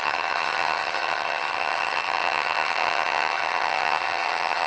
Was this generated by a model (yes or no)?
yes